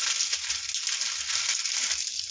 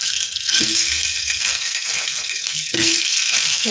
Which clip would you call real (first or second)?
first